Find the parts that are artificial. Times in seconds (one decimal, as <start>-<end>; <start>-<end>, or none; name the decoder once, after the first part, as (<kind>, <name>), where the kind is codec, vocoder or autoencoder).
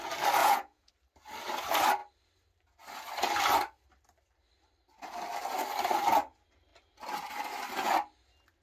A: 0.4-0.9 (vocoder, Vocos)